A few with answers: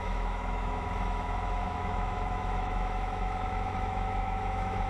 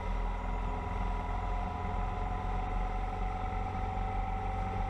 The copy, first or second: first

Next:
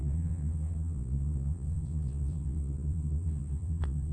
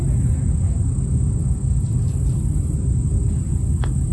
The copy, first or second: first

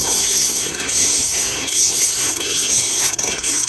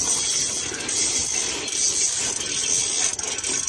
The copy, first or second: first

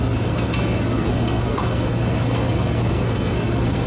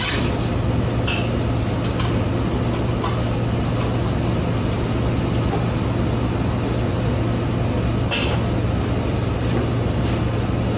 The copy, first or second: first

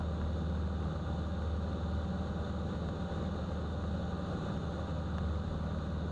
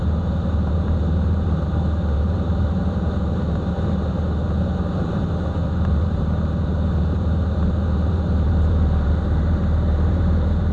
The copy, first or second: second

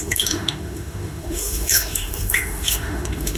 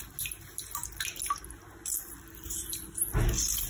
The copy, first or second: first